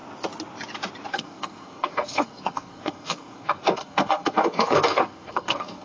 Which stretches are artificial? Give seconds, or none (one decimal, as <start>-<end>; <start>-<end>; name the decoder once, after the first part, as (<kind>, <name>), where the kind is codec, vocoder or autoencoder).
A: 1.1-5.8 (codec, SNAC)